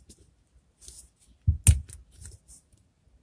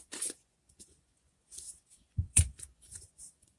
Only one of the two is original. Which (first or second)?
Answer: first